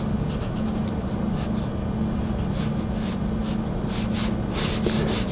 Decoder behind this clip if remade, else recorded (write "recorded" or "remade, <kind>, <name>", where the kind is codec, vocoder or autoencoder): recorded